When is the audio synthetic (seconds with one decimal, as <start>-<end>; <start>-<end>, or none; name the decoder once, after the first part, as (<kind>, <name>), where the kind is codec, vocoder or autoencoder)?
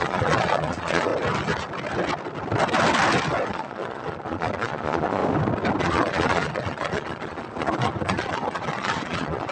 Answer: 0.0-1.1 (vocoder, Vocos); 3.5-5.2; 5.8-9.5